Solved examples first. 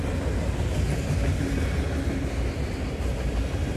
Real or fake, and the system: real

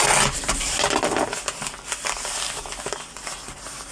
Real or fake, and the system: real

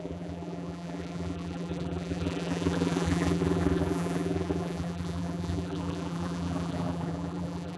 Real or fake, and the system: fake, vocoder, BigVGAN v2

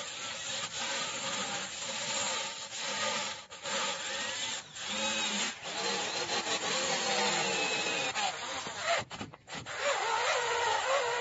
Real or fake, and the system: real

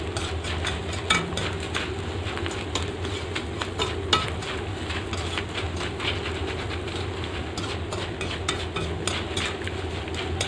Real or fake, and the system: real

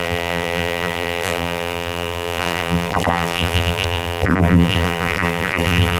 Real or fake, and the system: fake, vocoder, BigVGAN v2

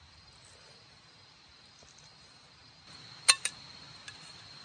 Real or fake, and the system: real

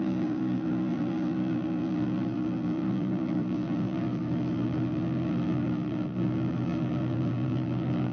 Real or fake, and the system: fake, vocoder, BigVGAN v2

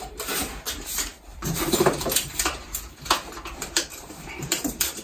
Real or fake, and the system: fake, vocoder, BigVGAN v2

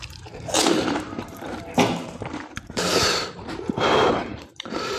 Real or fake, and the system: fake, vocoder, BigVGAN v2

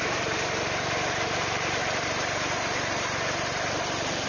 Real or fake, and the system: fake, vocoder, BigVGAN v2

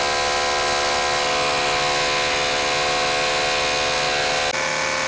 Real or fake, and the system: real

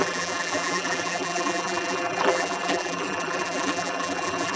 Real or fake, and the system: fake, vocoder, BigVGAN v2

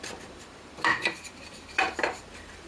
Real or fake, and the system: fake, vocoder, BigVGAN v2